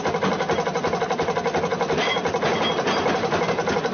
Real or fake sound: real